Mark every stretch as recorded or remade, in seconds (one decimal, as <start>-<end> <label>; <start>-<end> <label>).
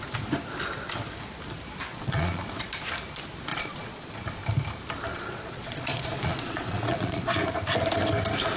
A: 0.0-1.9 recorded; 1.9-2.6 remade; 2.6-3.5 recorded; 3.5-4.4 remade; 4.4-5.1 recorded; 5.1-7.5 remade; 7.5-8.6 recorded